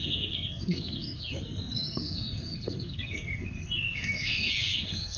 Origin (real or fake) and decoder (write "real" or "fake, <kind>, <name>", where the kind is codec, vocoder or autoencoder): fake, codec, SNAC